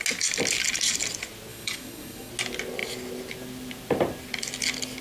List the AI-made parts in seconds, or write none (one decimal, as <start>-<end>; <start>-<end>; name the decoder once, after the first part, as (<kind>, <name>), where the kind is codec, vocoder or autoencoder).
1.5-2.3 (codec, DAC)